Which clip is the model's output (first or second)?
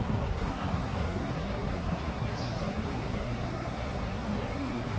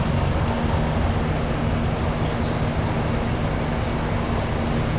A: first